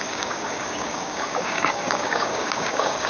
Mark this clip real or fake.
fake